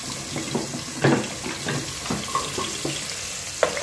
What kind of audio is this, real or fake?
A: real